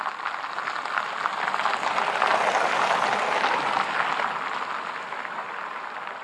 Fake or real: real